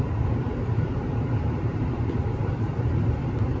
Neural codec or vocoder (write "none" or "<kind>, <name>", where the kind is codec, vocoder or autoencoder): vocoder, BigVGAN v2